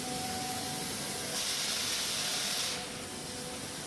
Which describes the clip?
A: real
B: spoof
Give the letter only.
A